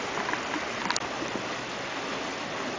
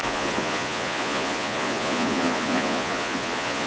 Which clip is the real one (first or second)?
first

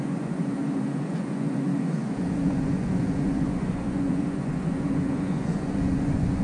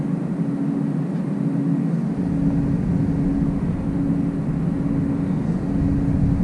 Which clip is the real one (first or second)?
second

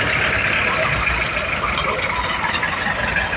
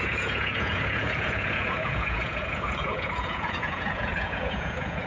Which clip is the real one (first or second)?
first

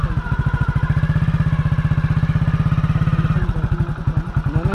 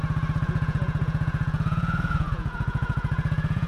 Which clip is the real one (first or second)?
first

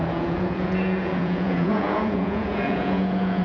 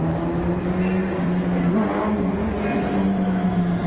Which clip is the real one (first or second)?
second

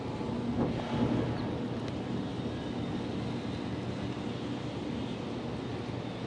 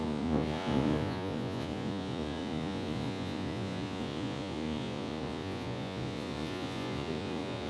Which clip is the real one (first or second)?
first